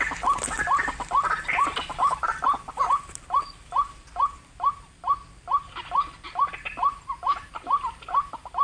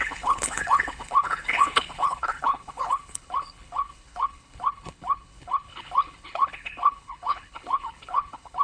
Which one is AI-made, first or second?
second